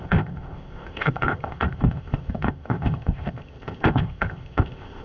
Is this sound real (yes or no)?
no